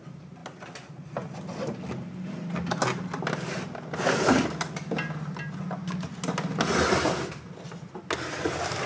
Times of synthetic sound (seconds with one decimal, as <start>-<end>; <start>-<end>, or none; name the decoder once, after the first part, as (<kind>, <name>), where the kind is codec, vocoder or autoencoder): none